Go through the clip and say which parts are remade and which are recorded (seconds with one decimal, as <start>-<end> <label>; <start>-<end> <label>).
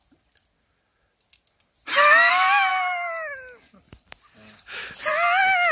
0.0-5.7 recorded